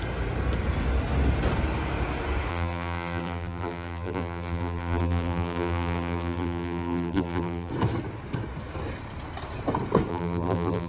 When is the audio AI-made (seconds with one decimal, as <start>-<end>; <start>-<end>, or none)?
2.5-7.7; 10.1-10.9